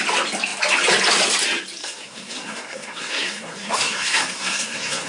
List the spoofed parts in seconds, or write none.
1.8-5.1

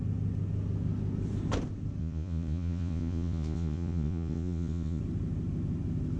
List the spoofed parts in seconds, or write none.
2.0-5.0

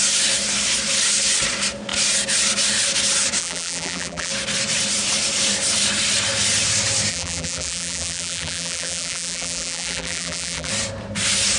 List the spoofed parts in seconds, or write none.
3.4-4.3; 7.1-10.7

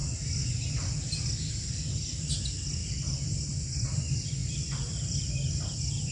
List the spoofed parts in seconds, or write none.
2.8-3.4